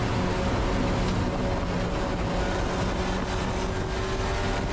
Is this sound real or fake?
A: real